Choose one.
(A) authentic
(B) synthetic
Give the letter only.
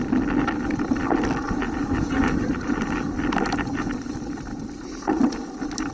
A